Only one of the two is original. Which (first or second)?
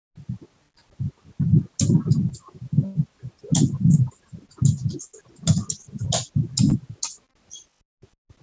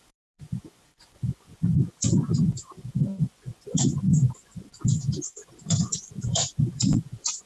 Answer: first